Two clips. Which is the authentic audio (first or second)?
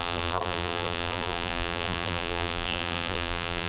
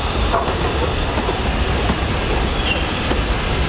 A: second